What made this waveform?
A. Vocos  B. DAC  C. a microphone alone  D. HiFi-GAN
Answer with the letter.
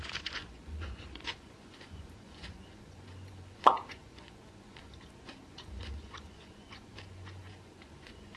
A